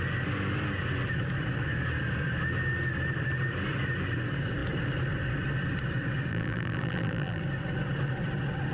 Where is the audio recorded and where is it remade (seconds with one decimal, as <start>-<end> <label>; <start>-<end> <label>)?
0.0-6.3 recorded; 6.3-7.4 remade; 7.4-8.7 recorded